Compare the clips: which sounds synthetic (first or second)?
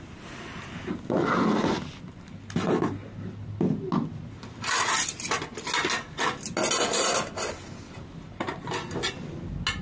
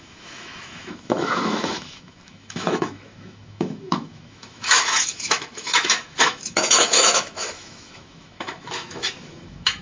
second